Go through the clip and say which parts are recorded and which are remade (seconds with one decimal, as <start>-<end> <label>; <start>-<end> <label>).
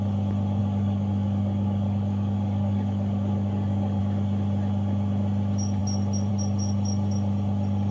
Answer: 0.0-0.6 recorded; 0.6-4.0 remade; 4.0-7.9 recorded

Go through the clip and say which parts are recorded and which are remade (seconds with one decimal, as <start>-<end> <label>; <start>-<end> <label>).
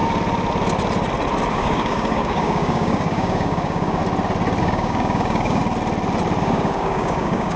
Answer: 0.0-1.5 recorded; 1.5-4.0 remade; 4.0-4.6 recorded; 4.6-5.6 remade; 5.6-6.4 recorded; 6.4-7.6 remade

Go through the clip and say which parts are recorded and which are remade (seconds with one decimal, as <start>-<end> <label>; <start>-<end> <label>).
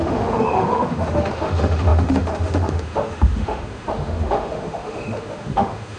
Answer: 0.0-6.0 remade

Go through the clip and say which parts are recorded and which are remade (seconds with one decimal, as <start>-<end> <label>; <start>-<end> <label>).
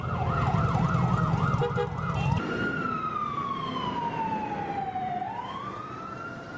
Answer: 0.0-6.6 recorded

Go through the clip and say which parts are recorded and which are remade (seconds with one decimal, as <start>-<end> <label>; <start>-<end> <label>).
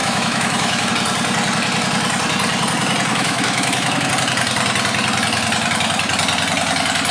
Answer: 0.0-0.9 remade; 0.9-3.1 recorded; 3.1-4.1 remade; 4.1-7.1 recorded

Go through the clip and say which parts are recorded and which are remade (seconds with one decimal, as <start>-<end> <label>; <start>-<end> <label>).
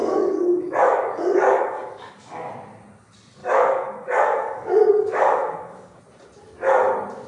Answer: 0.0-2.5 remade; 2.5-3.4 recorded; 3.4-6.0 remade; 6.0-7.3 recorded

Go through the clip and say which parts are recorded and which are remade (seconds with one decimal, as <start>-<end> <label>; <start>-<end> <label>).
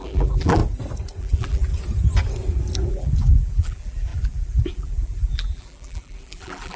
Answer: 0.0-0.6 remade; 0.6-1.2 recorded; 1.2-1.7 remade; 1.7-2.9 recorded; 2.9-6.8 remade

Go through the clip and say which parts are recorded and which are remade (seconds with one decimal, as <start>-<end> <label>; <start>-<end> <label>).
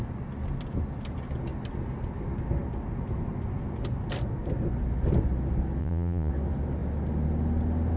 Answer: 0.0-5.8 recorded; 5.8-6.3 remade; 6.3-8.0 recorded